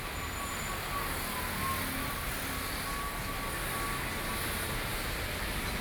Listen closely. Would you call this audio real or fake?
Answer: real